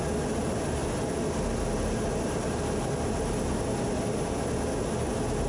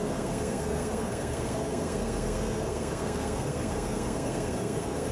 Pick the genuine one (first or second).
first